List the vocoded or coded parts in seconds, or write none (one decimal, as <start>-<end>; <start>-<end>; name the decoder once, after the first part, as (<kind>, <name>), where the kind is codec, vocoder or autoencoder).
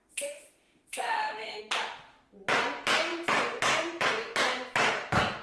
0.0-1.6 (autoencoder, DAC-VAE)